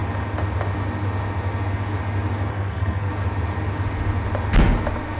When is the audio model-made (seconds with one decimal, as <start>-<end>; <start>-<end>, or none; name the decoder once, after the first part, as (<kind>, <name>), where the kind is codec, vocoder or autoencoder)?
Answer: 2.5-3.1 (codec, SNAC)